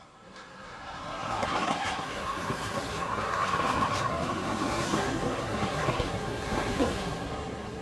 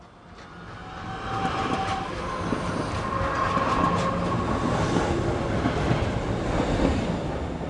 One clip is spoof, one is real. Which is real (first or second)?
second